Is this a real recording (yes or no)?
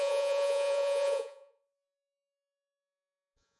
no